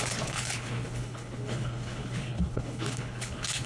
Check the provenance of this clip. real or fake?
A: fake